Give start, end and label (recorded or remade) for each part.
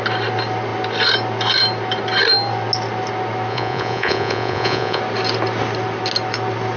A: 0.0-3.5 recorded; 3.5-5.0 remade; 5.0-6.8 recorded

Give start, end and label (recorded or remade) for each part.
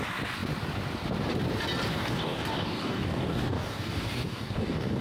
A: 0.0-1.9 recorded; 1.9-5.0 remade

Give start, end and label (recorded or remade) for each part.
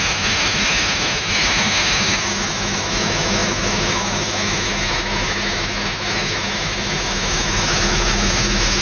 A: 0.0-8.8 remade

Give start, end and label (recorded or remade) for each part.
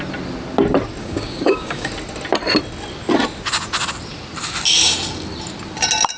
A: 0.0-1.0 recorded; 1.0-1.9 remade; 1.9-6.2 recorded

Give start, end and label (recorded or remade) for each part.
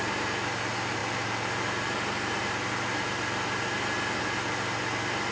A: 0.0-5.3 recorded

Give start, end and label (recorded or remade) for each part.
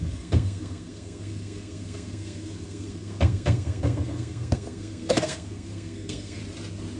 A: 0.0-6.4 remade; 6.4-7.0 recorded